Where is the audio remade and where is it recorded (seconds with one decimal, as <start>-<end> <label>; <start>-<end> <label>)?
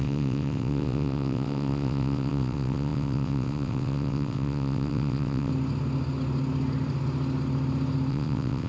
0.0-5.5 remade; 5.5-8.1 recorded; 8.1-8.7 remade